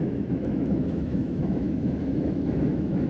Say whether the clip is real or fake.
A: fake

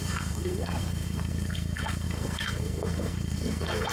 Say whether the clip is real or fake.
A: fake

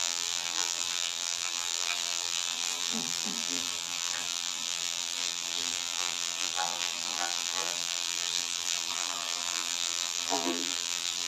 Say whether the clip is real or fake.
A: fake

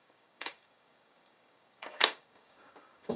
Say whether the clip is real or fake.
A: fake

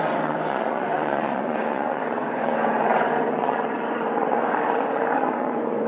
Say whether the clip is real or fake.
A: fake